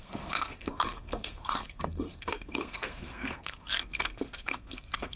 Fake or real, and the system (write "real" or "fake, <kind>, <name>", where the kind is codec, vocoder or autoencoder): fake, codec, SNAC